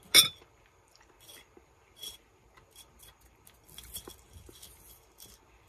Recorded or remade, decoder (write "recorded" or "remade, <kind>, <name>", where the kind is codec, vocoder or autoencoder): recorded